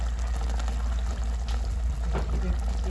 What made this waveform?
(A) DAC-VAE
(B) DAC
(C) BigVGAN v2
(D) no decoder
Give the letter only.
D